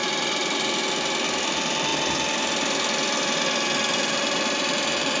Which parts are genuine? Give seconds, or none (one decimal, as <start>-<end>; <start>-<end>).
0.0-5.2